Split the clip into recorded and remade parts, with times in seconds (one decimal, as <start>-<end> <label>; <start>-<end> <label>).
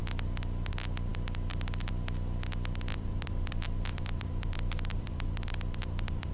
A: 0.0-2.9 recorded; 2.9-6.3 remade